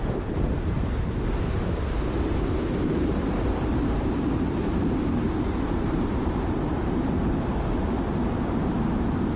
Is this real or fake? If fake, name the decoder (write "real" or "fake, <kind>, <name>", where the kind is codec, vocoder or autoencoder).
fake, vocoder, BigVGAN v2